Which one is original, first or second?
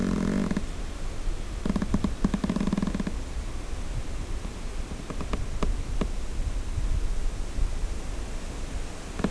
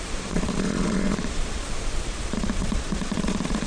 first